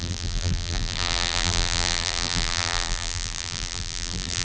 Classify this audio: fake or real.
fake